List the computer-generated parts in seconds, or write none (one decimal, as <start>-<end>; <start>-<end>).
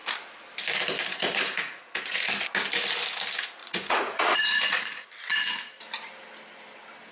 1.1-2.3; 3.6-5.1